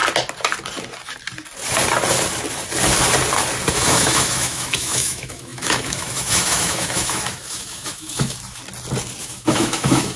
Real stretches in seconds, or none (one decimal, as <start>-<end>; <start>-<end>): 0.0-3.7; 8.6-9.2